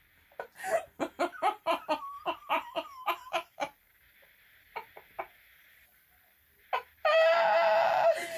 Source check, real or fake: real